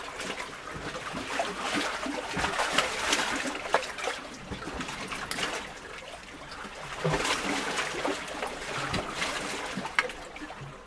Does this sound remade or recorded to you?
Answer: recorded